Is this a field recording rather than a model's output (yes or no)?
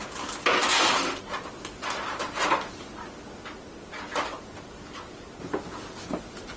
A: yes